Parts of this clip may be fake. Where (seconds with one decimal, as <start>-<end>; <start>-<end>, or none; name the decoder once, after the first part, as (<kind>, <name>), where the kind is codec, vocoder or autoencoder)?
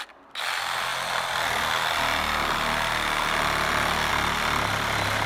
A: none